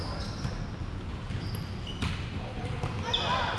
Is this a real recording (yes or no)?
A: yes